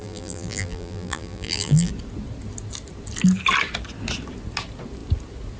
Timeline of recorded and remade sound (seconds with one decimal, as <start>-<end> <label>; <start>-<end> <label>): 0.0-1.9 remade; 1.9-5.6 recorded